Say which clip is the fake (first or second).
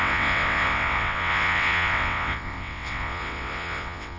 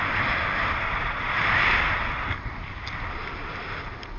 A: first